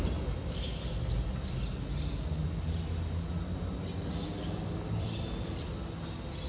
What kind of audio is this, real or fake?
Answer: real